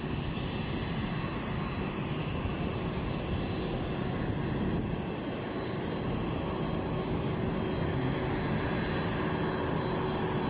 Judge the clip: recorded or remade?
recorded